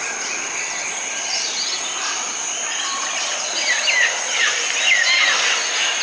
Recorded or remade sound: recorded